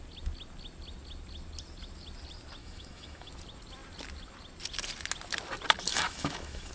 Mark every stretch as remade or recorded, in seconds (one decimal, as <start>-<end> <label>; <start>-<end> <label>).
0.0-2.6 recorded; 2.6-3.3 remade; 3.3-5.9 recorded; 5.9-6.7 remade